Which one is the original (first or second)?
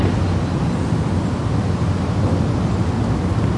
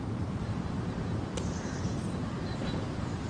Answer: first